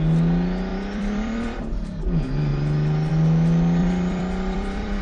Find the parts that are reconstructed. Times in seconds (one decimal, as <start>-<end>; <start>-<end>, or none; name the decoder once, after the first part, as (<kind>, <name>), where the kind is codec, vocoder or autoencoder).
0.7-2.0 (vocoder, BigVGAN v2); 3.8-5.0